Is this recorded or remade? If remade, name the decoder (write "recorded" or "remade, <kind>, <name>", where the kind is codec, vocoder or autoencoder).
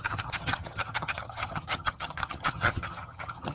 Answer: remade, vocoder, HiFi-GAN